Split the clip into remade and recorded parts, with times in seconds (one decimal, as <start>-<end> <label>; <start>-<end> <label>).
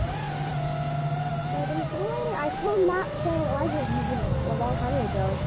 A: 0.0-1.9 recorded; 1.9-4.6 remade; 4.6-5.5 recorded